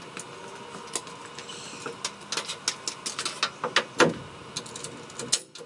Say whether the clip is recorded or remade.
recorded